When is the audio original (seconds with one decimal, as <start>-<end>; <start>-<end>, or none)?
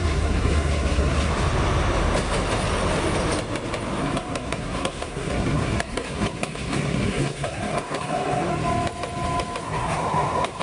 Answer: 1.3-4.0; 8.5-9.6